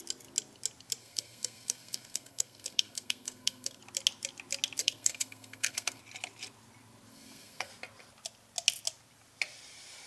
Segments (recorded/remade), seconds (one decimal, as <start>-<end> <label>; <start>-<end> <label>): 0.0-1.0 recorded; 1.0-3.8 remade; 3.8-4.8 recorded; 4.8-6.0 remade; 6.0-7.1 recorded; 7.1-7.7 remade; 7.7-10.1 recorded